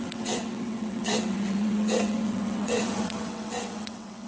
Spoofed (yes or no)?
yes